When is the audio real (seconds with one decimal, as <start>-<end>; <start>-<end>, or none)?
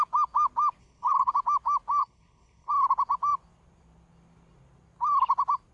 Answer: 0.0-0.8; 1.3-2.0; 2.7-5.7